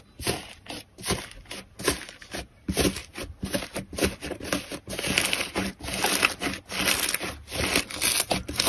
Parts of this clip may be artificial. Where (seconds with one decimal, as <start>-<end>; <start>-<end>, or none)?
none